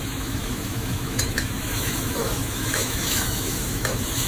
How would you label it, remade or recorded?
remade